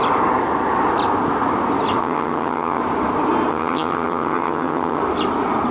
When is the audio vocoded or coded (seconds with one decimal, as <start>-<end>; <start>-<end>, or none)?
2.0-2.8; 3.5-5.0